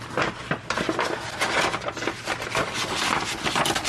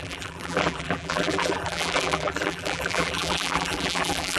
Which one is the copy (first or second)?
second